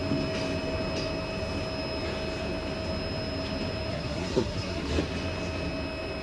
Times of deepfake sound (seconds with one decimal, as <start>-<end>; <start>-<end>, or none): 3.9-5.0